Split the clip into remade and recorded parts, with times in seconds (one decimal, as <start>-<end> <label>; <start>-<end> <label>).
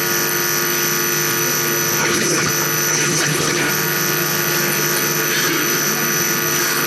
0.0-2.0 recorded; 2.0-2.5 remade; 2.5-2.9 recorded; 2.9-3.7 remade; 3.7-6.9 recorded